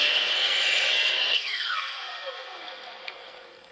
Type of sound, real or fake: fake